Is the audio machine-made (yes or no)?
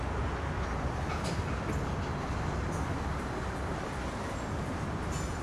no